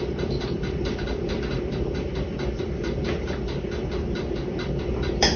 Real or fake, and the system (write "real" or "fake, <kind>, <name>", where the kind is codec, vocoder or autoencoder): real